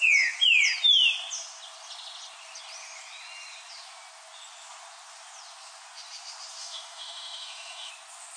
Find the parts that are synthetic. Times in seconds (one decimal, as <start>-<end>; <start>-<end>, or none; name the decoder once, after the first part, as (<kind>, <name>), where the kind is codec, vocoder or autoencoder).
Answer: 6.6-7.9 (autoencoder, DAC-VAE)